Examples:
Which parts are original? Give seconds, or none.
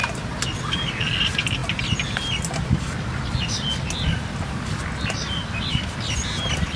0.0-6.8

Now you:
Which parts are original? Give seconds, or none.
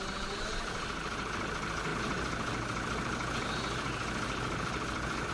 0.0-5.3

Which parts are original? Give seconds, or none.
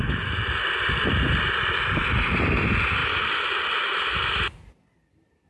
none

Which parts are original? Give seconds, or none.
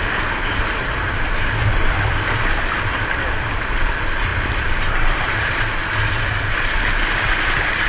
0.0-4.3; 5.6-7.9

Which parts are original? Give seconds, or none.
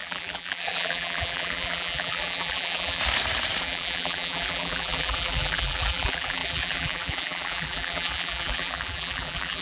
3.0-3.6